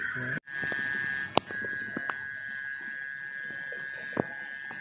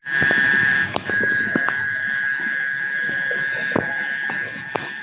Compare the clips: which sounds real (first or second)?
first